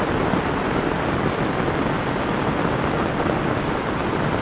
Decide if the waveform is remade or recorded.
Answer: recorded